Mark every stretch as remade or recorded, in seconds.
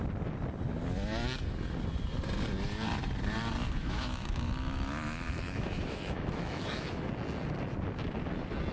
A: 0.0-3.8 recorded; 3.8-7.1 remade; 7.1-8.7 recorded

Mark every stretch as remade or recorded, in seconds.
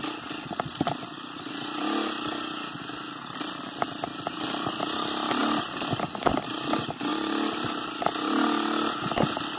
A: 0.0-9.6 recorded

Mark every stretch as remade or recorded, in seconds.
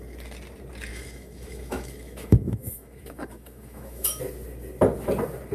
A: 0.0-0.9 recorded; 0.9-4.2 remade; 4.2-5.5 recorded